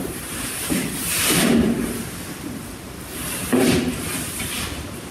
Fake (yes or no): yes